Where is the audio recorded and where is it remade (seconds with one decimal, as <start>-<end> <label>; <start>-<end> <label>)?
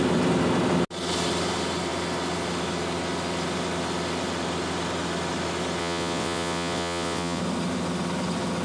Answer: 0.0-5.8 recorded; 5.8-7.4 remade; 7.4-8.6 recorded